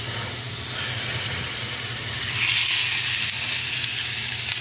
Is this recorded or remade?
recorded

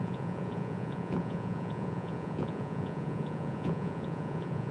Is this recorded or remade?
remade